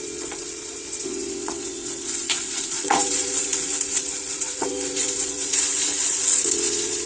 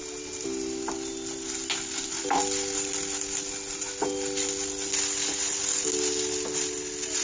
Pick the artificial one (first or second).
first